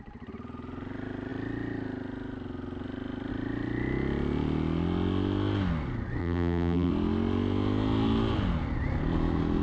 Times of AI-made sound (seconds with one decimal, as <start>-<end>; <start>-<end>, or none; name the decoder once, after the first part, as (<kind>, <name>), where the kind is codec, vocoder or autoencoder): 6.2-6.9 (vocoder, BigVGAN v2)